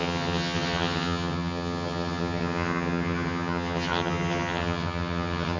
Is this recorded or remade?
remade